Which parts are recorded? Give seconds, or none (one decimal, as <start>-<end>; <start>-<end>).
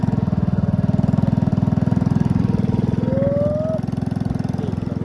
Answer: 0.0-5.0